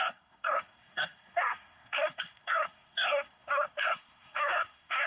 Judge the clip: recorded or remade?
remade